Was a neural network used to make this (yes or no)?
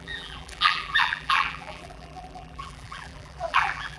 yes